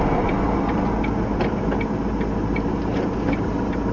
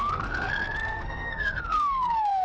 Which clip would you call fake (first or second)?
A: second